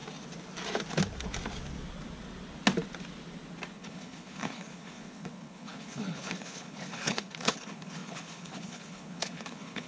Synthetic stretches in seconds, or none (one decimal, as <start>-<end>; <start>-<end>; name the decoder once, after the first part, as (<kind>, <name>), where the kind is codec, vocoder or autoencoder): 3.7-9.9 (codec, HILCodec)